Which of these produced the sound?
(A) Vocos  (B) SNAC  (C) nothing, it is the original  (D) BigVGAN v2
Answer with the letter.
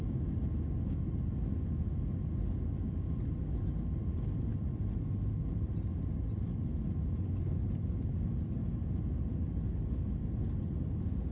C